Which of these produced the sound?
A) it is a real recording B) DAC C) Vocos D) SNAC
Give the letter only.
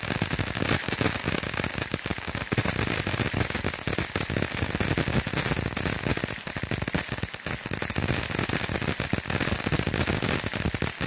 A